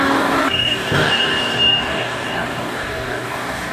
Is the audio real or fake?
fake